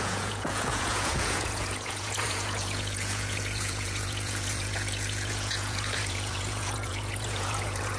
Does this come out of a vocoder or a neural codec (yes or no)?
yes